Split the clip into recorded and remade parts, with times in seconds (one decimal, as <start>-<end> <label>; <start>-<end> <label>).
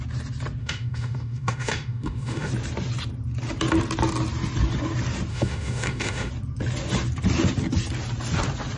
0.0-0.6 recorded; 0.6-2.5 remade; 2.5-5.3 recorded; 5.3-6.3 remade; 6.3-8.8 recorded